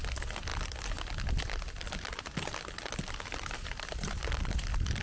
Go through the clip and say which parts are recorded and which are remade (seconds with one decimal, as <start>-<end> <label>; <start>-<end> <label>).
0.0-5.0 recorded